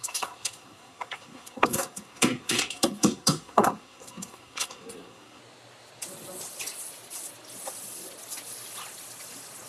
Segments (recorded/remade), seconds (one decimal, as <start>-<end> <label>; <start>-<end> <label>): 0.0-5.4 remade; 5.4-9.7 recorded